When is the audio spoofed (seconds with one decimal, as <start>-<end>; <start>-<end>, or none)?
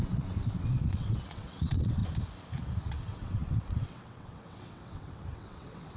0.0-2.0; 2.8-6.0